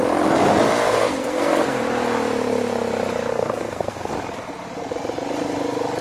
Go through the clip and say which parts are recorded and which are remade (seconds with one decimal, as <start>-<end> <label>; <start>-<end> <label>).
0.0-0.8 recorded; 0.8-1.8 remade; 1.8-3.3 recorded; 3.3-4.1 remade; 4.1-6.0 recorded

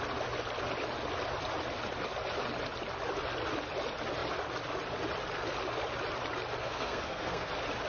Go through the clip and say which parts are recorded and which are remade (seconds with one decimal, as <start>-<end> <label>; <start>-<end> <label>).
0.0-6.6 recorded; 6.6-7.5 remade; 7.5-7.9 recorded